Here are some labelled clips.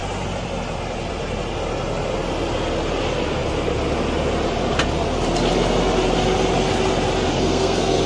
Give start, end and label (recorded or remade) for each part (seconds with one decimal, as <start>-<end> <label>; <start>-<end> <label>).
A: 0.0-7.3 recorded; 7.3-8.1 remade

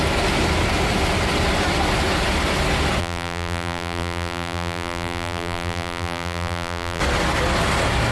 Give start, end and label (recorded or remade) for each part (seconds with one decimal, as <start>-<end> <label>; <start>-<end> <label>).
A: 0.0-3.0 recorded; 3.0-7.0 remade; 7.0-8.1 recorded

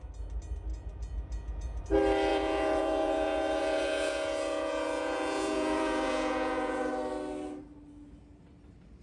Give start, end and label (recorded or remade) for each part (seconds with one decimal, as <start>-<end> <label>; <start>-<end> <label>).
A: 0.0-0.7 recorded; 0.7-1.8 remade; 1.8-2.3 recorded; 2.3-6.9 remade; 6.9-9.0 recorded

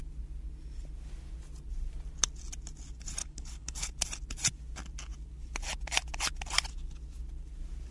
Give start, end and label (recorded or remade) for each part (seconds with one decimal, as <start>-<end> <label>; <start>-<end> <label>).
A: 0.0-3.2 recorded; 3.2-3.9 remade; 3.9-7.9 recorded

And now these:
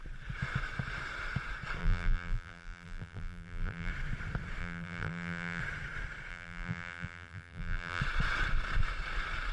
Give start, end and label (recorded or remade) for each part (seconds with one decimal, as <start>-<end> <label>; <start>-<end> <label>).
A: 0.0-1.8 recorded; 1.8-3.9 remade; 3.9-4.6 recorded; 4.6-5.6 remade; 5.6-6.3 recorded; 6.3-8.0 remade; 8.0-9.5 recorded